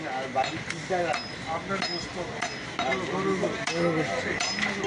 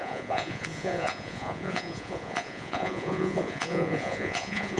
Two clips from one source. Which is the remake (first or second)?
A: second